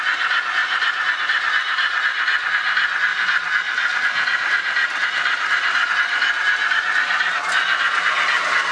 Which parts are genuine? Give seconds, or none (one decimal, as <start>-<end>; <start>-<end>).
0.0-3.1; 5.9-8.7